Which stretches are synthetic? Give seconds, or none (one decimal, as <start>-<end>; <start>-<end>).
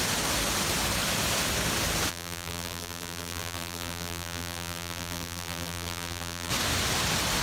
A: 2.1-6.5